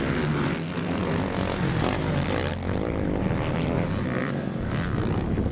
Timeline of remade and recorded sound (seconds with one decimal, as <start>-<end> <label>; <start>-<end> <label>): 0.0-5.5 recorded

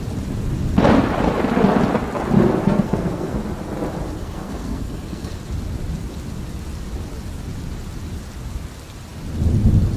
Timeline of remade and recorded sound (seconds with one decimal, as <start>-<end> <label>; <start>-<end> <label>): 0.0-2.6 recorded; 2.6-3.4 remade; 3.4-4.2 recorded; 4.2-5.4 remade; 5.4-10.0 recorded

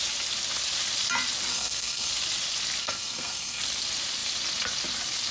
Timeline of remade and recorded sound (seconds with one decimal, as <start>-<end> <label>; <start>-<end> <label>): 0.0-1.5 recorded; 1.5-2.1 remade; 2.1-2.8 recorded; 2.8-3.6 remade; 3.6-5.3 recorded

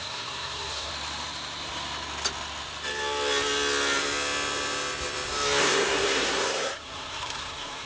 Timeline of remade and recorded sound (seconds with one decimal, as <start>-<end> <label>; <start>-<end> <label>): 0.0-0.9 remade; 0.9-5.6 recorded; 5.6-7.9 remade

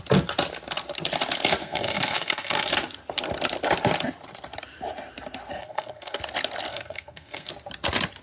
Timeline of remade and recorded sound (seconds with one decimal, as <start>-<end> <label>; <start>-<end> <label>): 0.0-1.6 recorded; 1.6-2.7 remade; 2.7-5.6 recorded; 5.6-6.2 remade; 6.2-6.7 recorded; 6.7-7.5 remade; 7.5-8.2 recorded